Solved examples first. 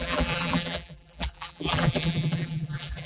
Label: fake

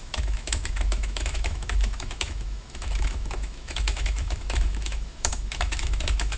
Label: fake